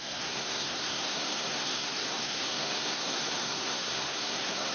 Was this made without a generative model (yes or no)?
no